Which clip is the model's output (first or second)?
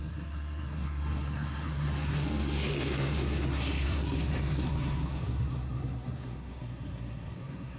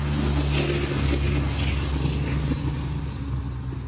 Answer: first